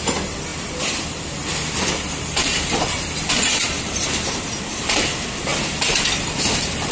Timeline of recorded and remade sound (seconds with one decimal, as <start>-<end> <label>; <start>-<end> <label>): 0.0-0.5 recorded; 0.5-4.6 remade; 4.6-5.5 recorded; 5.5-6.1 remade; 6.1-6.9 recorded